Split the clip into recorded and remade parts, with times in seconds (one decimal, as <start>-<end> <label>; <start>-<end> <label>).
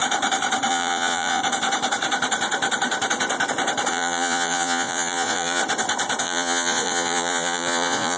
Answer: 0.0-0.7 recorded; 0.7-1.4 remade; 1.4-3.9 recorded; 3.9-5.6 remade; 5.6-6.2 recorded; 6.2-8.2 remade